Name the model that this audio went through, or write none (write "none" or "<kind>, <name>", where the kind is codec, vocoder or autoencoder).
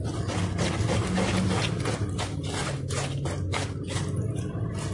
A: none